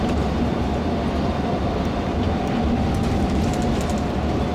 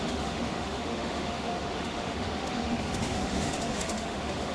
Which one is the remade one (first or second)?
second